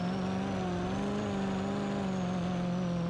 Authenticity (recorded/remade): recorded